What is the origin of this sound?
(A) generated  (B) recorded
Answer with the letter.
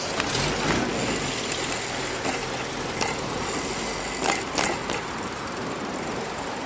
B